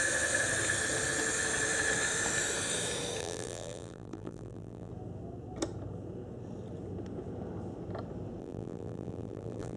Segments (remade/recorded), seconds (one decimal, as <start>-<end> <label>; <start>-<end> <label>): 0.0-3.2 recorded; 3.2-4.9 remade; 4.9-8.4 recorded; 8.4-9.8 remade